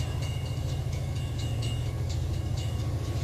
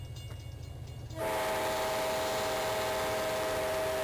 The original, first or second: second